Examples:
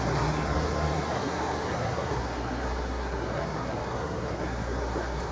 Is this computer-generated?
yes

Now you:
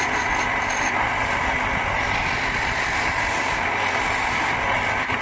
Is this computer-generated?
no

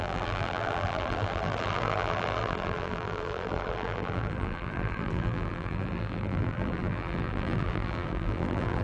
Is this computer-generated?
yes